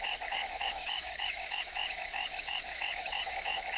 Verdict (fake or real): fake